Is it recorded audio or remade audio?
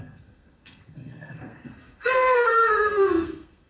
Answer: remade